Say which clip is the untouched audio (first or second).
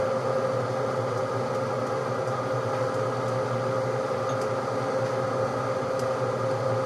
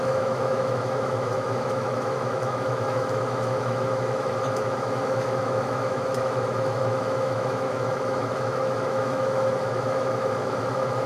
first